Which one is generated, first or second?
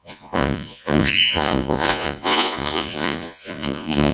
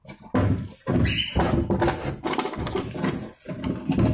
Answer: first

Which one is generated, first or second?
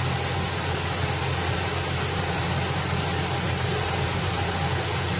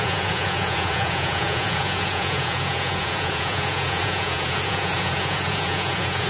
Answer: second